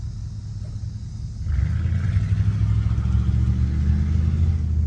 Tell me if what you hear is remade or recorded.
recorded